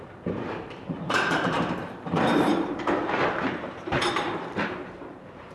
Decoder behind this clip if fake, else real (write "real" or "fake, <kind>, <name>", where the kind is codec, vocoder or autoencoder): fake, vocoder, BigVGAN v2